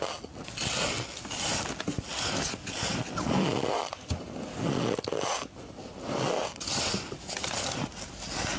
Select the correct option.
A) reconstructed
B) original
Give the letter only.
B